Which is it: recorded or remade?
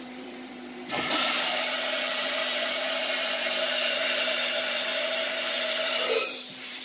remade